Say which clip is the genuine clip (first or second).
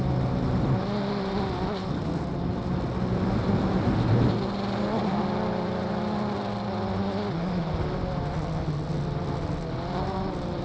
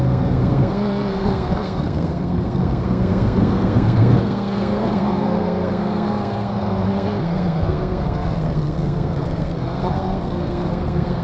first